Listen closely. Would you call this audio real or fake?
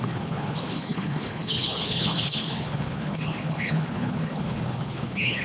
fake